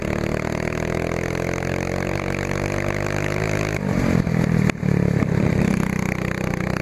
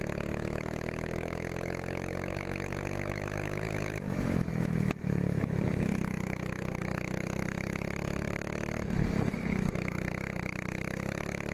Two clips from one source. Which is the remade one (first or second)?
second